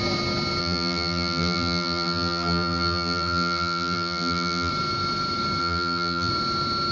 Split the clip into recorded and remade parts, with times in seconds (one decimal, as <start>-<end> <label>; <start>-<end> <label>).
0.0-0.6 recorded; 0.6-4.7 remade; 4.7-5.6 recorded; 5.6-6.3 remade; 6.3-6.9 recorded